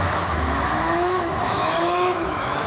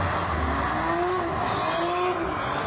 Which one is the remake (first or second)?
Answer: first